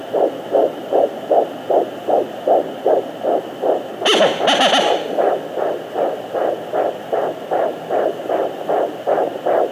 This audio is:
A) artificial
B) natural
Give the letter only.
B